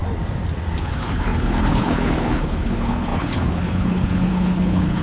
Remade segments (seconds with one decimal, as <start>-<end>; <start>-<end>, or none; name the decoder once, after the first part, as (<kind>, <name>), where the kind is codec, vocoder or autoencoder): 0.8-5.0 (codec, HILCodec)